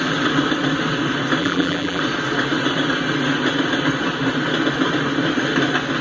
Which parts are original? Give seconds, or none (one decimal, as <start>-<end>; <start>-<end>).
0.0-1.4; 2.0-6.0